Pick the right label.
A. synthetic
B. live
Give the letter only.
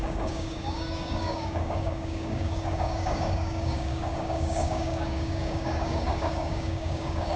A